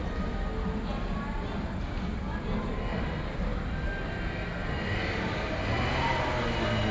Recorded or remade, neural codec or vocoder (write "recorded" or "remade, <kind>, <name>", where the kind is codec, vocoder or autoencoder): recorded